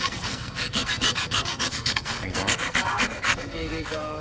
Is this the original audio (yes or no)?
no